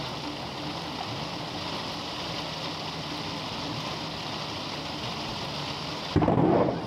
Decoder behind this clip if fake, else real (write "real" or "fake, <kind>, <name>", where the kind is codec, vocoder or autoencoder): real